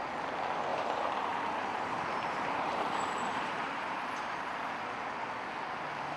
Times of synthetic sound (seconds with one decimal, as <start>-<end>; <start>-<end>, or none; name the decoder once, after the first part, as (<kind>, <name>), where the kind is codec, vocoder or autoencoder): 0.7-4.4 (vocoder, BigVGAN v2)

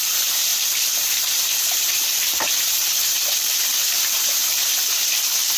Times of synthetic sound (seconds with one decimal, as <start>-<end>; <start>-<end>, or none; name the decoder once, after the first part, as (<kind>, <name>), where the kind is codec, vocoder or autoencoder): 0.0-4.6 (vocoder, BigVGAN v2)

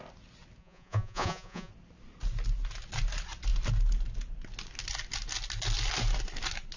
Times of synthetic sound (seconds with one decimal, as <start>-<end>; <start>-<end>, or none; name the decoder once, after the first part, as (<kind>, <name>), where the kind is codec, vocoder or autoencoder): 0.6-1.7 (vocoder, Vocos)

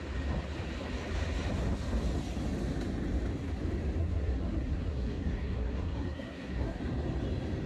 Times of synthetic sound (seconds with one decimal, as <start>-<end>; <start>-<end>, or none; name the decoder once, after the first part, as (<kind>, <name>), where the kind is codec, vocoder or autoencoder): 4.0-6.8 (codec, SNAC)

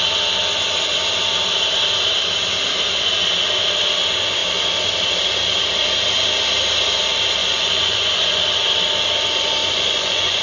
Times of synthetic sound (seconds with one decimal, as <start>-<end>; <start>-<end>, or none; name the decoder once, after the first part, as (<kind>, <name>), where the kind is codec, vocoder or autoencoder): 7.4-8.4 (vocoder, Vocos); 9.6-10.4

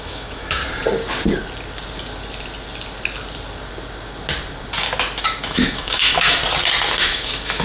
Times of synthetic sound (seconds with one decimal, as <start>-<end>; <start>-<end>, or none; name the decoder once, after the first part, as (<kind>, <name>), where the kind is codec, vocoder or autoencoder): 0.0-0.6 (autoencoder, DAC-VAE); 5.2-6.4; 7.0-7.6